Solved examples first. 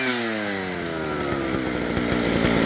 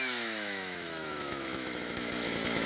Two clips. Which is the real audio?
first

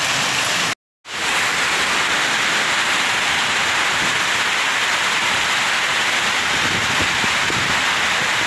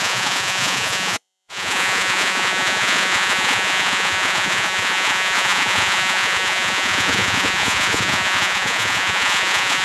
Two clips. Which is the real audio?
first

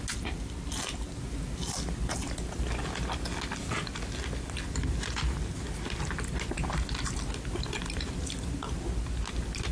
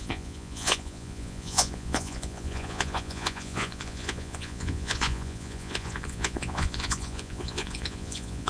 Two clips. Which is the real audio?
first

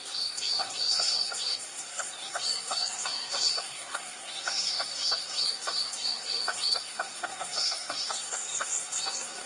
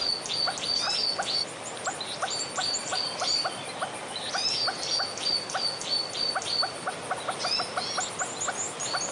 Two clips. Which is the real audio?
second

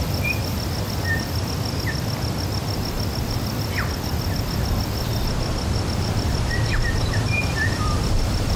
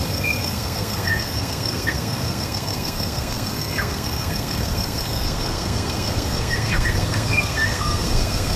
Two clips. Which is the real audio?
first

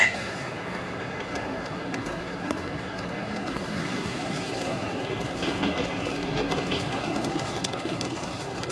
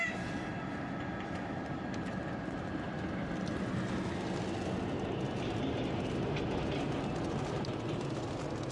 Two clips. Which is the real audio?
second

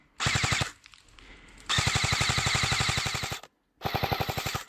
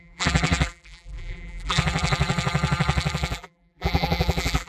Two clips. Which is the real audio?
first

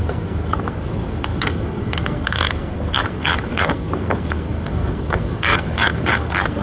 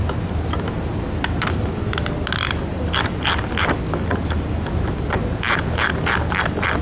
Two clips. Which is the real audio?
second